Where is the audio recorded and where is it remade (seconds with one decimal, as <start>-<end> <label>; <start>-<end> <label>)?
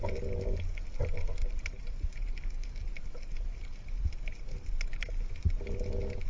0.0-1.4 recorded; 1.4-5.1 remade; 5.1-6.3 recorded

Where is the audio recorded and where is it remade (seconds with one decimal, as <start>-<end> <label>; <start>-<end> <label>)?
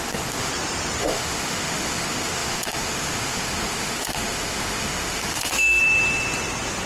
0.0-0.5 remade; 0.5-1.0 recorded; 1.0-5.8 remade; 5.8-6.9 recorded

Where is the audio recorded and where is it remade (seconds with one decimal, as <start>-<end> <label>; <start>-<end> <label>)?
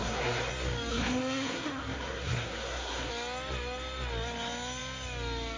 0.0-0.5 remade; 0.5-0.9 recorded; 0.9-3.1 remade; 3.1-5.6 recorded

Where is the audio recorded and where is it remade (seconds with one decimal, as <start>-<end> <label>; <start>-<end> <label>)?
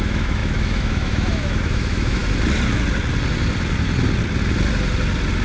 0.0-2.2 remade; 2.2-5.4 recorded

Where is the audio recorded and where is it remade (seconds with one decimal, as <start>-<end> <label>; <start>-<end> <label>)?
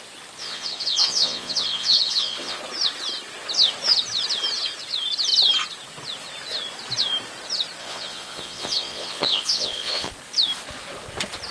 0.0-0.4 recorded; 0.4-2.6 remade; 2.6-7.8 recorded; 7.8-10.1 remade; 10.1-11.5 recorded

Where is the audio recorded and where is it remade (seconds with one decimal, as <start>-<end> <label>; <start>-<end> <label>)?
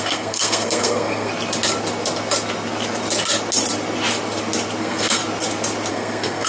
0.0-1.3 remade; 1.3-4.8 recorded; 4.8-5.2 remade; 5.2-5.9 recorded; 5.9-6.5 remade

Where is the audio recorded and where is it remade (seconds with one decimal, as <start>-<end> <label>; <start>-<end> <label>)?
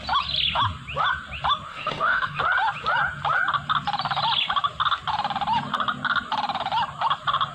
0.0-1.7 recorded; 1.7-2.4 remade; 2.4-7.5 recorded